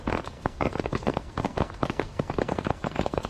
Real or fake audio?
fake